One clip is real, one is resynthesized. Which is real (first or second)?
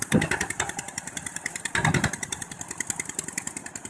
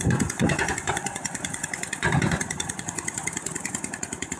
first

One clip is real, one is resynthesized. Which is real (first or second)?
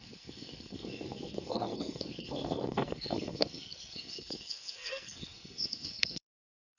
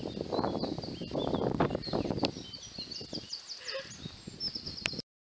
second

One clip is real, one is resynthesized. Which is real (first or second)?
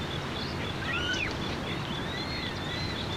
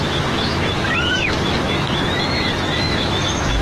first